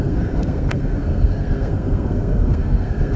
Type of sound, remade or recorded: remade